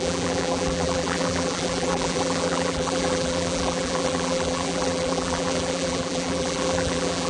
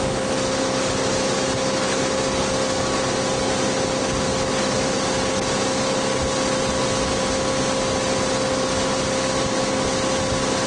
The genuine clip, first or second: second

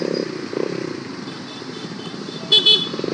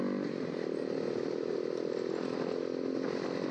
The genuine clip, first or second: second